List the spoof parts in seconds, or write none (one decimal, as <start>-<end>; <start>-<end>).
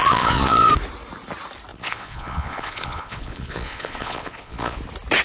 0.0-0.7; 1.7-4.8